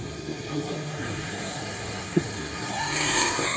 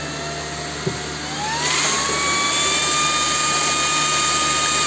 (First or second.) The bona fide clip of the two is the second